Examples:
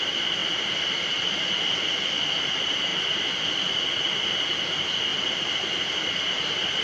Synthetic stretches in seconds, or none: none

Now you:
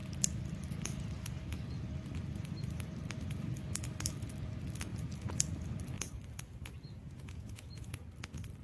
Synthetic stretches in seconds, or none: 7.0-8.0 (vocoder, Vocos)

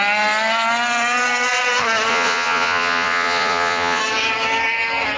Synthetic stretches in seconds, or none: 2.1-4.0 (vocoder, Vocos)

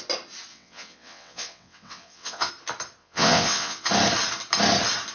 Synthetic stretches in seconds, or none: 0.5-2.5 (vocoder, WaveNeXt); 3.0-3.9

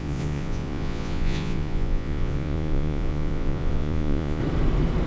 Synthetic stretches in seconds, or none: 0.0-4.4 (vocoder, Vocos)

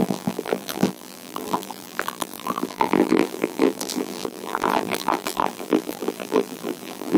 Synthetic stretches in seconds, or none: 0.0-7.2 (vocoder, BigVGAN v2)

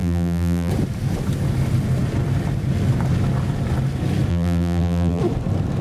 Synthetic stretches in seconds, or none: 0.0-0.7 (vocoder, BigVGAN v2); 4.3-5.2

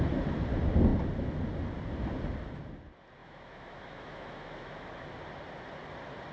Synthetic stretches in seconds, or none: 3.2-4.9 (autoencoder, DAC-VAE)